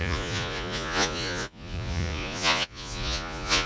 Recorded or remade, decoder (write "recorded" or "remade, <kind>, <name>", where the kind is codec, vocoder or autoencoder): remade, vocoder, Vocos